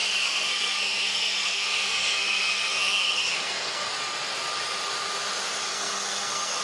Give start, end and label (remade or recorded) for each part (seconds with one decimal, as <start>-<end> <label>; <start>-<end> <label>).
0.0-3.9 remade; 3.9-5.7 recorded; 5.7-6.6 remade